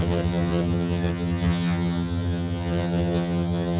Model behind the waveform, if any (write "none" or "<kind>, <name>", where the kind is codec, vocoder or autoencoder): vocoder, HiFi-GAN